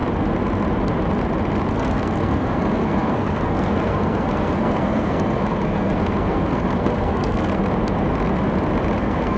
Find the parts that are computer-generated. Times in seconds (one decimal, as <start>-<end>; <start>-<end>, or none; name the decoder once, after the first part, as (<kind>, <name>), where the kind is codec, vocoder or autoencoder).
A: 1.7-7.6 (codec, SNAC); 9.0-9.4